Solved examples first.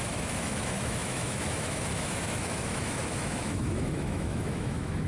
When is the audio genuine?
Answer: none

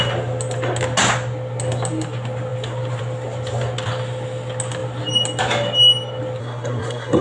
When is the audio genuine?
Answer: 0.0-6.4

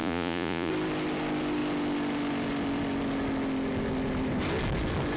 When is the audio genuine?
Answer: 0.7-5.2